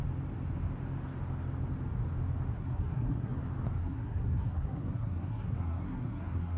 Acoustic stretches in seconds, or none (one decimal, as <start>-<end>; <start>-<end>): 0.0-2.5; 3.4-3.8

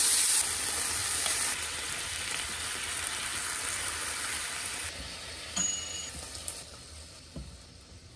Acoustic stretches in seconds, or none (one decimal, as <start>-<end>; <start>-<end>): 0.0-8.2